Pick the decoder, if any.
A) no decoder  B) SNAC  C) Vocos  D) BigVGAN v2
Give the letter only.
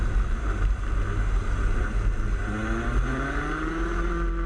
A